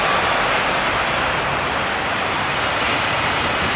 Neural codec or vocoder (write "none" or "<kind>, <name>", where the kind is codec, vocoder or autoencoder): none